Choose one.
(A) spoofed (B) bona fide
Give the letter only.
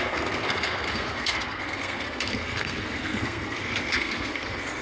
A